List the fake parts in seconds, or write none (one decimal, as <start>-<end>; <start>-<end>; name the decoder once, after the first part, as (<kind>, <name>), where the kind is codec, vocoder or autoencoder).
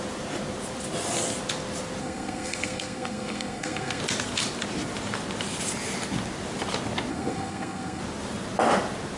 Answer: 2.0-4.0 (codec, SNAC); 7.1-8.0